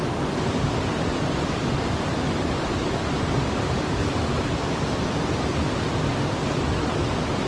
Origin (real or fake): real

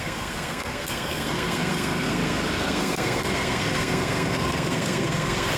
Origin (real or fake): fake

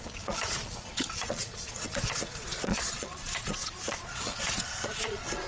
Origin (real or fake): fake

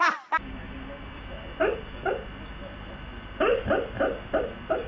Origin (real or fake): real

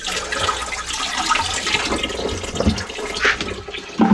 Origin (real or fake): real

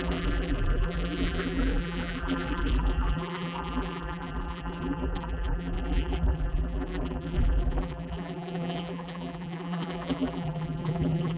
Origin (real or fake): fake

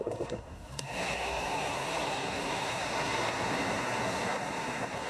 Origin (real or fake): fake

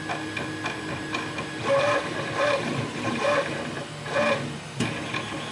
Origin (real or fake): real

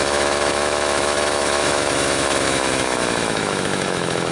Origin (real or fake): fake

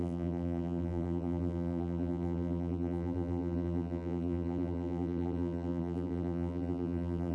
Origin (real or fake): fake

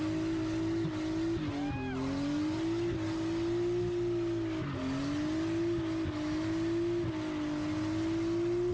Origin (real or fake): real